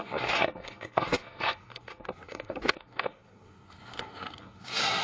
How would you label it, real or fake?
fake